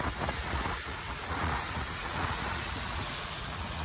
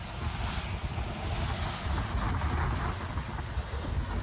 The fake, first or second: first